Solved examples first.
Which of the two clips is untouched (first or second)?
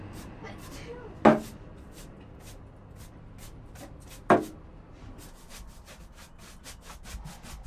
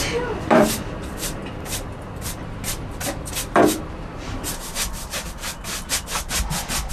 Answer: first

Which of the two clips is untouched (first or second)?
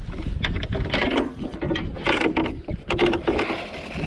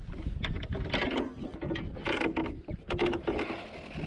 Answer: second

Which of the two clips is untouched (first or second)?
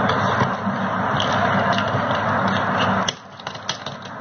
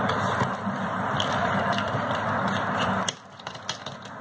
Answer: first